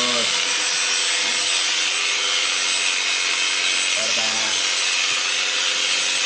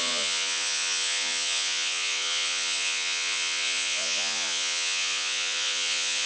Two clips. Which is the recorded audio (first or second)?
first